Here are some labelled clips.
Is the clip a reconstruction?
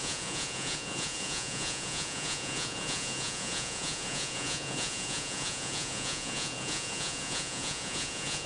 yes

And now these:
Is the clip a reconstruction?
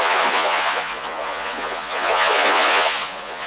yes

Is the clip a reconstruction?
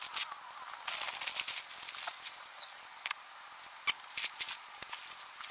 no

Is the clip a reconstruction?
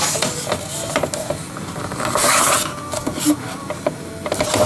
no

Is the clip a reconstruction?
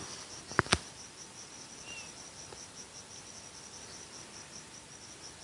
no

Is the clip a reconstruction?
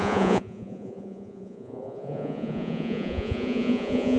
yes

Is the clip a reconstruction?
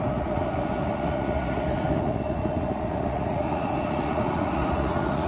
yes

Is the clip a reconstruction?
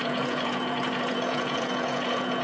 yes